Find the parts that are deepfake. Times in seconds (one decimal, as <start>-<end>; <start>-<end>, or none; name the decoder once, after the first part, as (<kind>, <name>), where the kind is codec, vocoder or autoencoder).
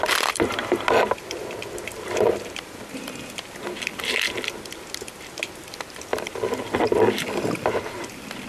none